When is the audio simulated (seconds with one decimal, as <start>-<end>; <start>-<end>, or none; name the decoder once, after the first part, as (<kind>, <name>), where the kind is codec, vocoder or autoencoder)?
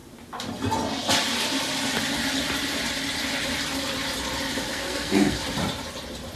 4.7-5.4 (codec, SNAC)